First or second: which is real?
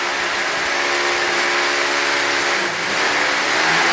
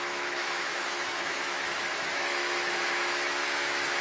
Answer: first